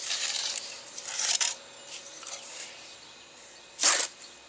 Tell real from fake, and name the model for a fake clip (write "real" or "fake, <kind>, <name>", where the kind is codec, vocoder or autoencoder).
fake, vocoder, BigVGAN v2